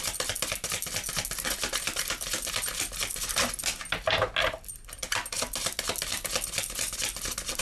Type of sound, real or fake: real